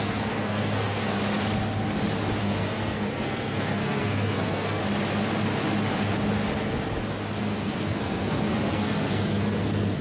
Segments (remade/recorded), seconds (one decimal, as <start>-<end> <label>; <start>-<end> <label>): 0.0-1.2 remade; 1.2-2.4 recorded; 2.4-4.8 remade; 4.8-7.4 recorded; 7.4-10.0 remade